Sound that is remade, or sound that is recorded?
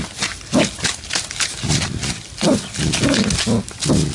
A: recorded